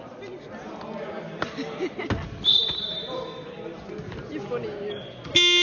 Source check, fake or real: real